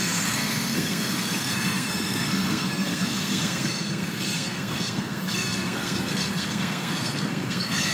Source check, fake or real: fake